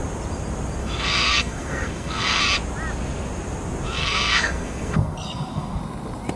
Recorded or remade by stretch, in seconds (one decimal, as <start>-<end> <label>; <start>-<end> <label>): 0.0-0.8 recorded; 0.8-2.4 remade; 2.4-4.0 recorded; 4.0-5.8 remade; 5.8-6.4 recorded